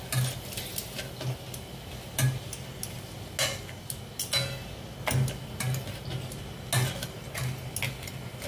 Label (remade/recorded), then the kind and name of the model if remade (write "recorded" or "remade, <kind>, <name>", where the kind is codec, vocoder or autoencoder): recorded